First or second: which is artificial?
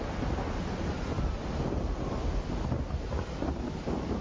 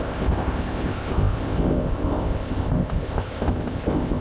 second